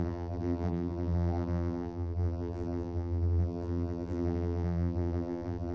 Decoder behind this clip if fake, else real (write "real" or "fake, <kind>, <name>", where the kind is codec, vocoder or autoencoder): fake, vocoder, BigVGAN v2